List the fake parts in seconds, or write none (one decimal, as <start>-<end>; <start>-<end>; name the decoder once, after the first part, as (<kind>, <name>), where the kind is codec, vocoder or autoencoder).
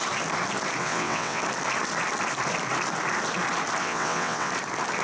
0.8-1.4 (vocoder, WaveNeXt); 3.8-4.5